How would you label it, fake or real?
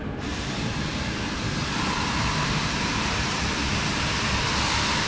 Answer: fake